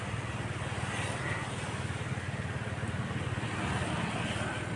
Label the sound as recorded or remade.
recorded